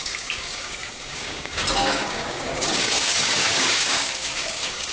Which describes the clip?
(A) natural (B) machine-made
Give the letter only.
B